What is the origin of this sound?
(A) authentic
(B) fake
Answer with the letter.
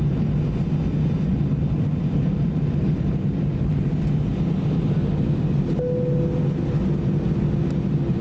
A